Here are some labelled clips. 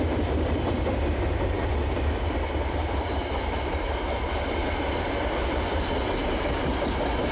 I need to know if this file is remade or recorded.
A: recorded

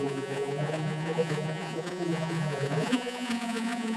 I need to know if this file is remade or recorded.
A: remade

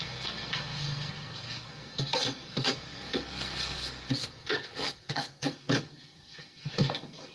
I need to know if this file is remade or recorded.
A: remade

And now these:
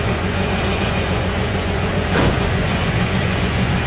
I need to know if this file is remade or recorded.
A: remade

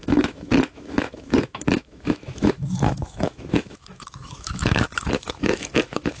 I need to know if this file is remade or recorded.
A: remade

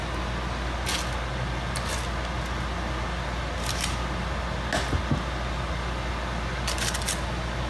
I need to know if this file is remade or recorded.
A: recorded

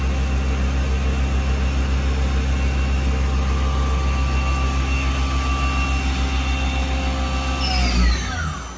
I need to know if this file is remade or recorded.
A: recorded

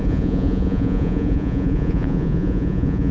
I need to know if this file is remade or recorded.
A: remade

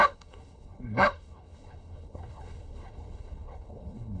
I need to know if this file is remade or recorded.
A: remade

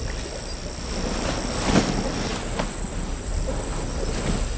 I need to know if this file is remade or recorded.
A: recorded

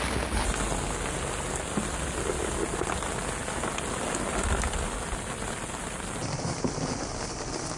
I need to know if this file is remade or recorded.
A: recorded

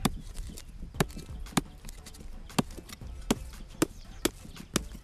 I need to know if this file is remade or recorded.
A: recorded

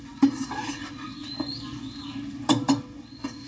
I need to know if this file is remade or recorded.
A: recorded